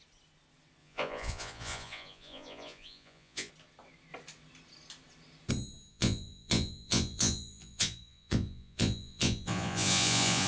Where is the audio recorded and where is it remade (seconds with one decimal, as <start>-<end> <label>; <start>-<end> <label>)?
0.0-0.8 recorded; 0.8-3.5 remade; 3.5-5.9 recorded; 5.9-10.5 remade